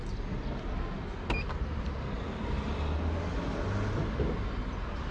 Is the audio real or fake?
real